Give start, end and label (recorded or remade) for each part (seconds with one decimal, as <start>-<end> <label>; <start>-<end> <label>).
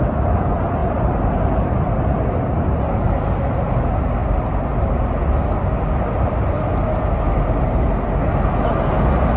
0.0-9.4 recorded